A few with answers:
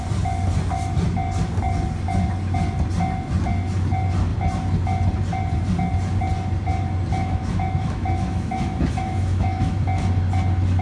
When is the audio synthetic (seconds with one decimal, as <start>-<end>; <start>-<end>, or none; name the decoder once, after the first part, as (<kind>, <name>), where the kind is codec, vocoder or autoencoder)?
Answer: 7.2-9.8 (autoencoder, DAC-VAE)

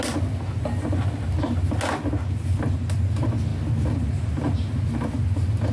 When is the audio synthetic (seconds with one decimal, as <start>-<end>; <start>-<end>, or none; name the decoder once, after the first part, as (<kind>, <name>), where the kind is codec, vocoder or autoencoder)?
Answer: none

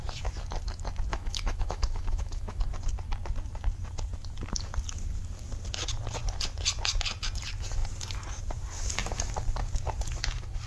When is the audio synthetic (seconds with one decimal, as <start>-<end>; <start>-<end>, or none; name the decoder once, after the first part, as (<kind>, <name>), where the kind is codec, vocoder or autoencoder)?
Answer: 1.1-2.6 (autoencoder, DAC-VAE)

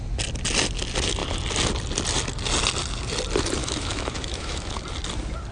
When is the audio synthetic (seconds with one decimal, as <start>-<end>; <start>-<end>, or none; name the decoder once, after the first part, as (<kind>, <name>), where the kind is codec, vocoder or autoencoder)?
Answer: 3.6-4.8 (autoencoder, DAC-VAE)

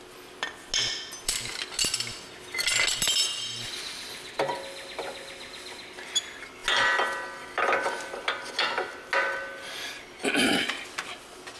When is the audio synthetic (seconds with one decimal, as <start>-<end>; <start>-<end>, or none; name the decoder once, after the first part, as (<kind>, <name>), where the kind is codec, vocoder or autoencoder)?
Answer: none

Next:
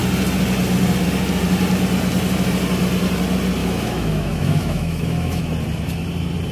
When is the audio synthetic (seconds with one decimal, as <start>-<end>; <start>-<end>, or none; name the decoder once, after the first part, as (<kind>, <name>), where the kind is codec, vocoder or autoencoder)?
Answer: 3.6-5.4 (autoencoder, DAC-VAE)

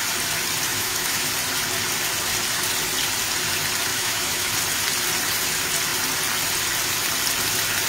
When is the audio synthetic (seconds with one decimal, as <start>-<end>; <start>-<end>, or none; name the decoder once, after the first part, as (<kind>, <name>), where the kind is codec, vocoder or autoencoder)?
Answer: 0.7-1.3 (autoencoder, DAC-VAE); 3.9-4.5

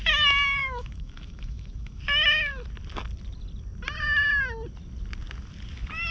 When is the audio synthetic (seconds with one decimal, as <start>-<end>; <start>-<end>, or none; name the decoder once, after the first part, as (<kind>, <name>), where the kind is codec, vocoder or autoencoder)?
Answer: 0.6-2.0 (autoencoder, DAC-VAE)